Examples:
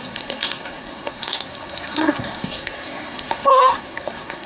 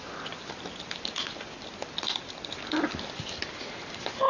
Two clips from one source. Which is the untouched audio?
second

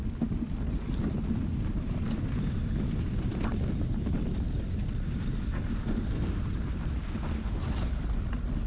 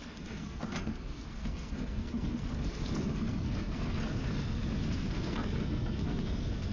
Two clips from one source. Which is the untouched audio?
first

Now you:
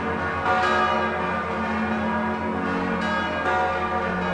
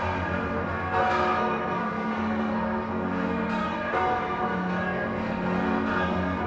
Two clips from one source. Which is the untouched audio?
first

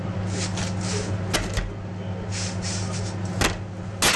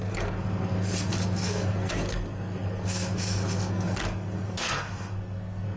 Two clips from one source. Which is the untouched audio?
first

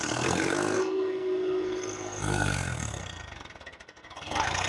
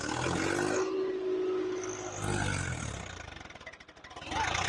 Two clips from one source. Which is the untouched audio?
second